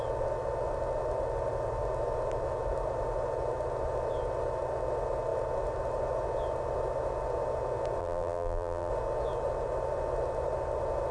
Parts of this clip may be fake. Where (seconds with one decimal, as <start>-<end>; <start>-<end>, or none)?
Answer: 8.0-8.9